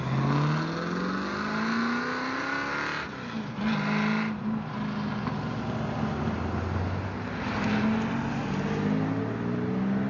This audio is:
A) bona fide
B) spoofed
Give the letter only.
A